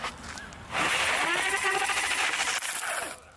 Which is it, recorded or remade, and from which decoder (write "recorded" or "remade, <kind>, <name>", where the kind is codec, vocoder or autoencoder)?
recorded